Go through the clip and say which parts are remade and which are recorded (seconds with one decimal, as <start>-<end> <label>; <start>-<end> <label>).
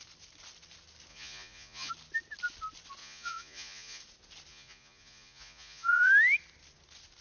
0.0-1.1 recorded; 1.1-1.9 remade; 1.9-3.0 recorded; 3.0-4.0 remade; 4.0-4.5 recorded; 4.5-6.1 remade; 6.1-7.2 recorded